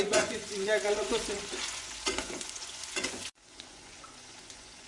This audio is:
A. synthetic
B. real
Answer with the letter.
A